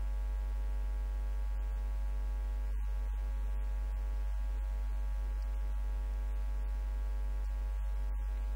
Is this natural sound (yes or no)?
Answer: yes